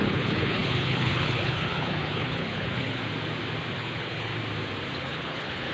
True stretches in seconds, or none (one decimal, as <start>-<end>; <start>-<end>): 3.0-3.7; 4.3-5.0